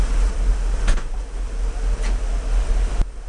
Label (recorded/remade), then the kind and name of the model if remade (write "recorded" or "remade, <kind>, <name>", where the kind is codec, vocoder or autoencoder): recorded